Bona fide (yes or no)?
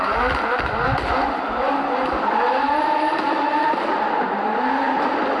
yes